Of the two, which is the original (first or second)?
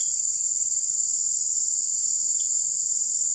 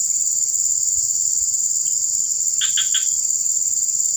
second